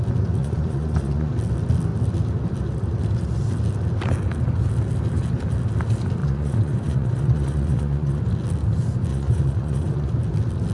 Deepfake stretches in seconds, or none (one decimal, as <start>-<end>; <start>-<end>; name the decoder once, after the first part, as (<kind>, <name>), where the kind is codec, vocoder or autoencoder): 0.4-1.3 (vocoder, Vocos); 6.2-8.2; 9.1-10.1